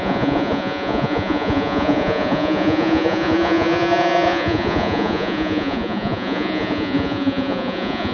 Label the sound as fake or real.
fake